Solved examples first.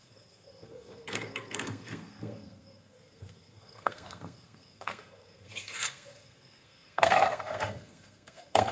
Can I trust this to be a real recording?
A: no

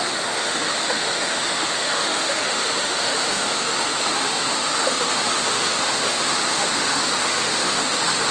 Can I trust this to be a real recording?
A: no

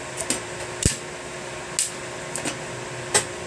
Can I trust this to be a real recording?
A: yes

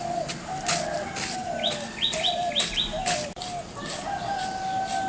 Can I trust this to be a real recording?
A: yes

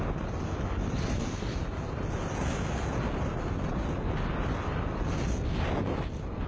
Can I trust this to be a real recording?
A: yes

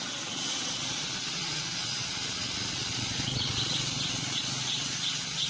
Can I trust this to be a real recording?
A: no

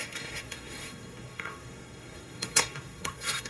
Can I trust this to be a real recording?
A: no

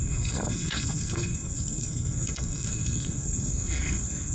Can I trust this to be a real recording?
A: no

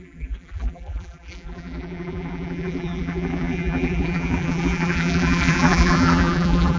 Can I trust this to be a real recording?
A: no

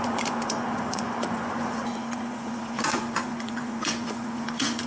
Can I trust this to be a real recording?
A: no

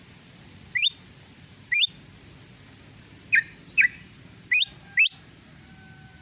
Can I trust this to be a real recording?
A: yes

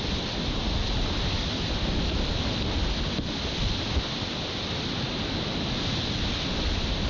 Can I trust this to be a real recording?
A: yes